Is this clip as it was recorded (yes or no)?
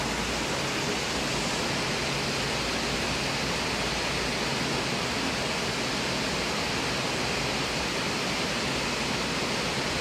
yes